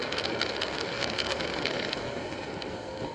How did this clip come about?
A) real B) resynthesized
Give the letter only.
B